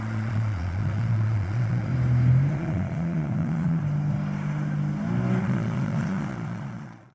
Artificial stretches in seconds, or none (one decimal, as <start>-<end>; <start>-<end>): 0.0-1.9; 2.5-3.8; 5.4-7.1

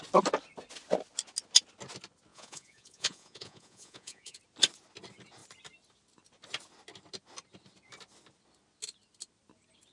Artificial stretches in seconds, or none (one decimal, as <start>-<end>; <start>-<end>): 2.3-4.4

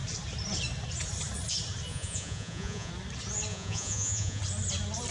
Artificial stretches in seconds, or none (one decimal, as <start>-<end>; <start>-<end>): 1.9-2.9; 3.5-4.4

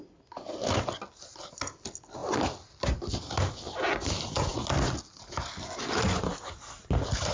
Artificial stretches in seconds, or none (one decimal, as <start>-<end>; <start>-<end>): none

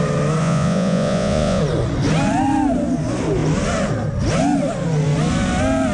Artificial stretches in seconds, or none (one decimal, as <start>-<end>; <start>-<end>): 0.4-1.6

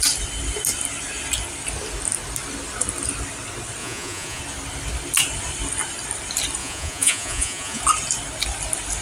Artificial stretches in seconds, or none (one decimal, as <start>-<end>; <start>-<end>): 3.8-4.4; 6.6-7.8